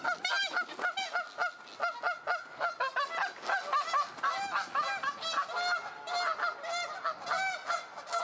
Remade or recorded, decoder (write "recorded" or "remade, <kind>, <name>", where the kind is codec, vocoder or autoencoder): recorded